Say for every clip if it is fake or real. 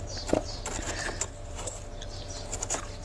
real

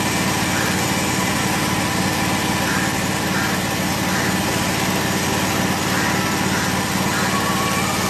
real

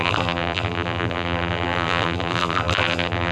fake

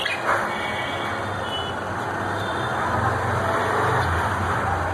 real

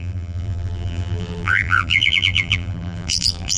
fake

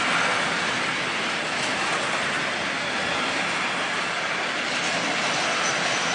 real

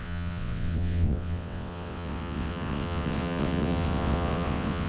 fake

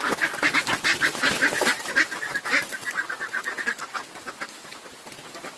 real